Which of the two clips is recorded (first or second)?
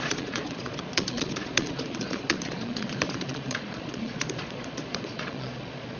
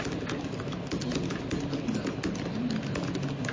second